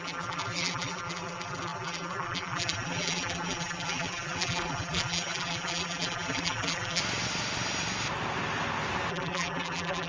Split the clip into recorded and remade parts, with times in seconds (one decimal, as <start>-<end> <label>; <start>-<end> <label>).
0.0-7.0 remade; 7.0-9.1 recorded; 9.1-10.1 remade